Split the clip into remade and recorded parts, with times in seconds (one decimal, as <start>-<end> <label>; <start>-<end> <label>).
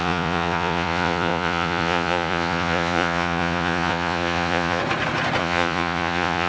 0.0-4.8 remade; 4.8-5.4 recorded; 5.4-6.5 remade